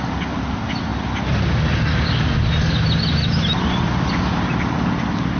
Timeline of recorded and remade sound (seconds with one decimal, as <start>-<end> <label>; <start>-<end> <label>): 0.0-5.4 recorded